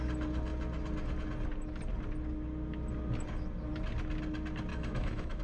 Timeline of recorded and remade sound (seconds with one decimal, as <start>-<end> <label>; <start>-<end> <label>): 0.0-4.7 recorded; 4.7-5.4 remade